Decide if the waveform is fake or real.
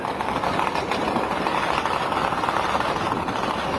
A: real